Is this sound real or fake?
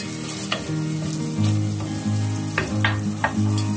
real